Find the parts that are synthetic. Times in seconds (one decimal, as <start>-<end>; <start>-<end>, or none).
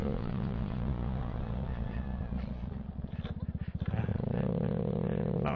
0.0-3.1; 4.1-5.6